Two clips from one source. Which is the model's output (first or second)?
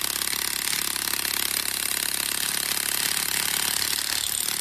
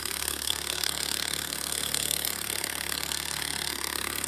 second